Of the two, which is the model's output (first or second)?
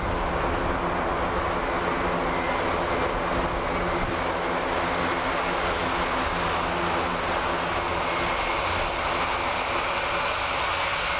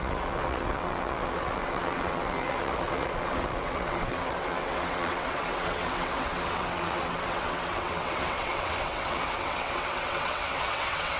second